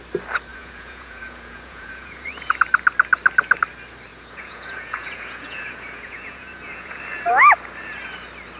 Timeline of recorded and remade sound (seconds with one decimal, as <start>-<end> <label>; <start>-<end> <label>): 0.0-0.5 recorded; 0.5-2.6 remade; 2.6-4.1 recorded; 4.1-7.0 remade; 7.0-8.6 recorded